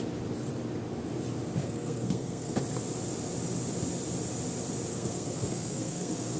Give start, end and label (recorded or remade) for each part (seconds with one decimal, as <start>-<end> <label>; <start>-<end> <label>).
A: 0.0-1.6 recorded; 1.6-2.6 remade; 2.6-4.9 recorded; 4.9-6.4 remade